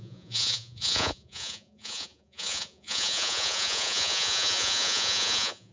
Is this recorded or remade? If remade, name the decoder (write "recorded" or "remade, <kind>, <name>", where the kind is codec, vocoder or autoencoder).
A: remade, vocoder, Vocos